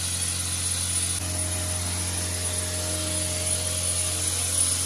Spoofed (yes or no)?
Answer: no